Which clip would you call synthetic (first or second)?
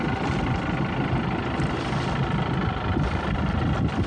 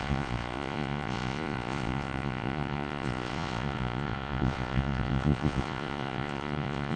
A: second